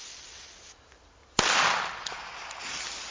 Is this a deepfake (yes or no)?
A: no